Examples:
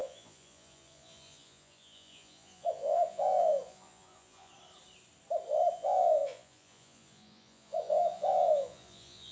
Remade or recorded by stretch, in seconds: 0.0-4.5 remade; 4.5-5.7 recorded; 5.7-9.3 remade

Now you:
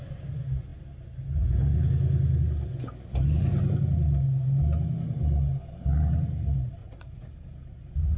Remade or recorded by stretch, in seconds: 0.0-6.8 recorded; 6.8-7.3 remade; 7.3-8.2 recorded